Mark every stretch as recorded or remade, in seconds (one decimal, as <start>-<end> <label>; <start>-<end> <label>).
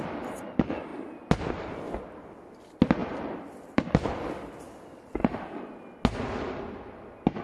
0.0-3.0 recorded; 3.0-4.1 remade; 4.1-7.4 recorded